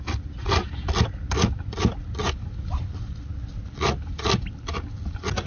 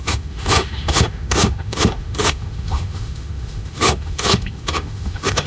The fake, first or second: second